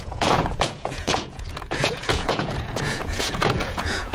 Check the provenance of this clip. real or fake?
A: fake